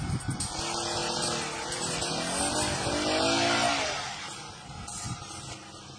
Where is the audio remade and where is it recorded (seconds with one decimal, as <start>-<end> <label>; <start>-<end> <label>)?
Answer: 0.0-6.0 recorded